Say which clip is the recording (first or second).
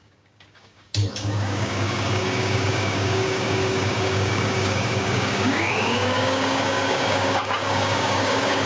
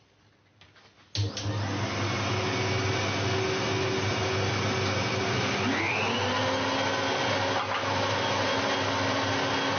second